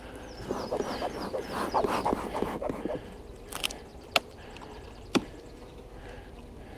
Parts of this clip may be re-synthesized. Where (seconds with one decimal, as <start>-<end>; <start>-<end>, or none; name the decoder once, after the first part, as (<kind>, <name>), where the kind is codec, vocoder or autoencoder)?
none